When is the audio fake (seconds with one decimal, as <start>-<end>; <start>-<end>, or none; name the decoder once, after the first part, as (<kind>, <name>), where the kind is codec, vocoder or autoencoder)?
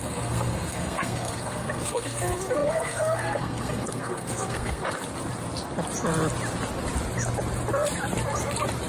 0.0-4.8 (codec, SNAC)